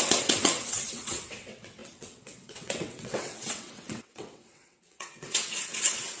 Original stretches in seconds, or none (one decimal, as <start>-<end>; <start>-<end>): none